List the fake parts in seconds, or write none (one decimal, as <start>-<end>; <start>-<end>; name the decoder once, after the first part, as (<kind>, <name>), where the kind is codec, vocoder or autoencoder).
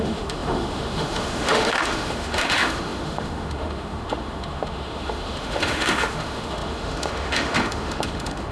0.0-8.5 (autoencoder, DAC-VAE)